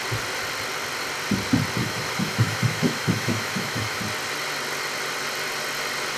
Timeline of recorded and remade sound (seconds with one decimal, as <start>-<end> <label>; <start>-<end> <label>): 0.0-1.8 recorded; 1.8-4.0 remade; 4.0-6.2 recorded